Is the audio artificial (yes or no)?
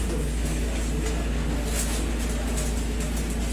no